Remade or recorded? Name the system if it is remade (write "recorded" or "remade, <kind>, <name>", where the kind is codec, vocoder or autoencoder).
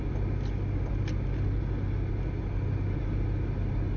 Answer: recorded